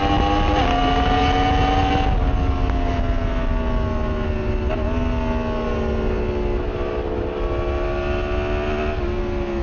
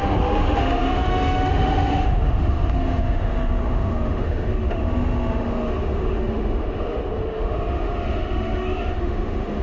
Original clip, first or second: first